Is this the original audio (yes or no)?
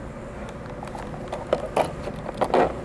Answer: yes